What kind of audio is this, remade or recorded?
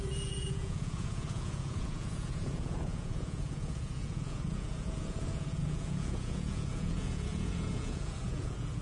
remade